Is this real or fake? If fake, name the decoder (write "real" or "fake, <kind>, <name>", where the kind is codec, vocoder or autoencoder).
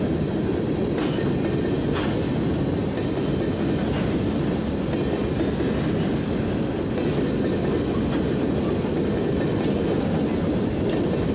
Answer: real